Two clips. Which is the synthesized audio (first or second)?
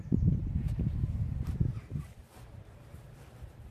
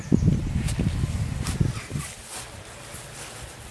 first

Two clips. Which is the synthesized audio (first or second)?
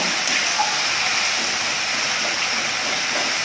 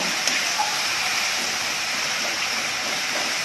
second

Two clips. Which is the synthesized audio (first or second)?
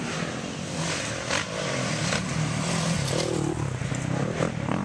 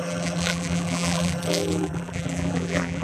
second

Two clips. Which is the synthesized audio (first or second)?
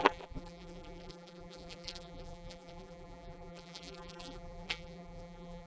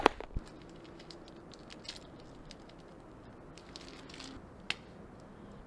first